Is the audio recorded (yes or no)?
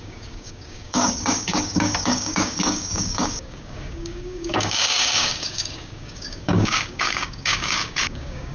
no